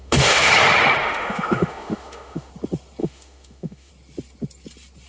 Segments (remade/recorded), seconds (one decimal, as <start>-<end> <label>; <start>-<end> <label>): 0.0-0.5 remade; 0.5-1.0 recorded; 1.0-2.5 remade; 2.5-3.0 recorded; 3.0-3.9 remade; 3.9-5.1 recorded